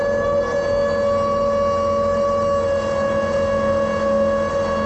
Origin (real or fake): real